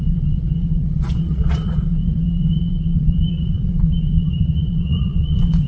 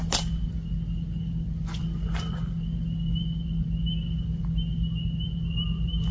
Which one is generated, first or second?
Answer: first